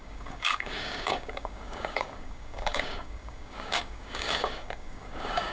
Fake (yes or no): yes